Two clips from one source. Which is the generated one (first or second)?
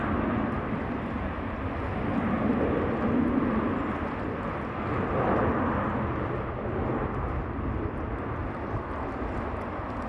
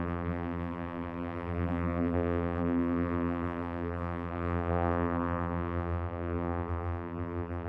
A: second